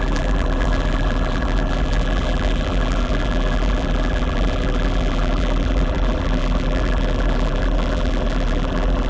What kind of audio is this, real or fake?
fake